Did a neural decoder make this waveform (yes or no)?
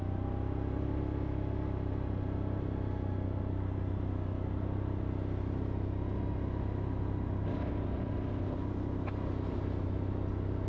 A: no